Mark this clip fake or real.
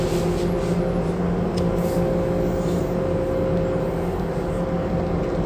real